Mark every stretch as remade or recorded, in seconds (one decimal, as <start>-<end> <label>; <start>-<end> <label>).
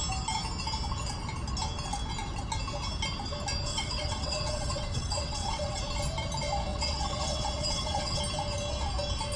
0.0-3.7 recorded; 3.7-5.8 remade; 5.8-6.7 recorded; 6.7-8.2 remade; 8.2-9.4 recorded